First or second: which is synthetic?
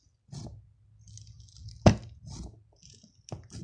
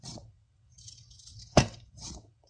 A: second